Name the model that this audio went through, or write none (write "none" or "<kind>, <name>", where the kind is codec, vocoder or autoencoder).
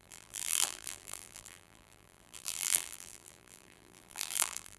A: vocoder, BigVGAN v2